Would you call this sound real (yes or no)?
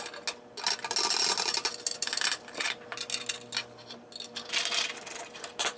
yes